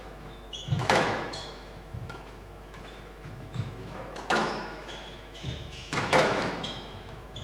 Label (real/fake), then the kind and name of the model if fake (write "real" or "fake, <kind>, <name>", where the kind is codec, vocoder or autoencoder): fake, autoencoder, DAC-VAE